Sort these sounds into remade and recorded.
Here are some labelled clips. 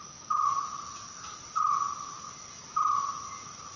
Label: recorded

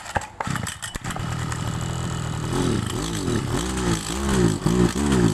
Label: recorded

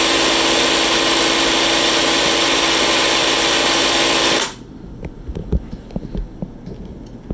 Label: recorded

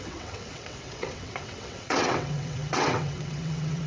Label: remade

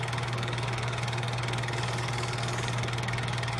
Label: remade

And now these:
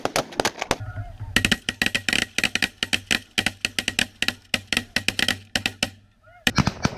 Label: recorded